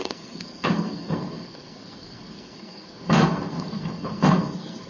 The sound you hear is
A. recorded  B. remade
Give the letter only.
B